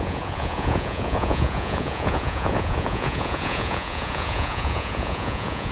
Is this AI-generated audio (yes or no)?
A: yes